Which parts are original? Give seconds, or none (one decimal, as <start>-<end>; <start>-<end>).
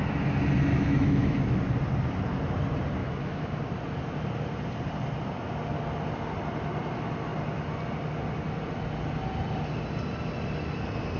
0.0-0.7; 1.6-3.0; 3.6-11.2